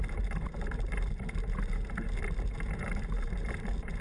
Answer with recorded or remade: remade